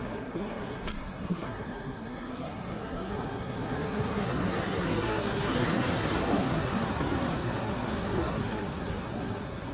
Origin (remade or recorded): remade